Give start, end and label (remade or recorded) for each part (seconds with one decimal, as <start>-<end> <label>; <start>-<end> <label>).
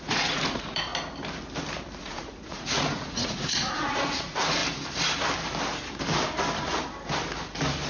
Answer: 0.0-0.9 remade; 0.9-2.0 recorded; 2.0-4.6 remade; 4.6-7.9 recorded